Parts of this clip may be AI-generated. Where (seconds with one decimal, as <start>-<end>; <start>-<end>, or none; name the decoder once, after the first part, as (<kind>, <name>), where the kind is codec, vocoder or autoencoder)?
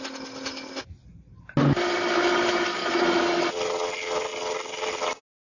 2.8-3.5 (vocoder, Vocos)